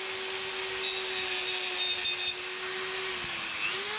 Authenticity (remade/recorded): recorded